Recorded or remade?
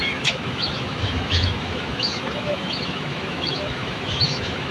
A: remade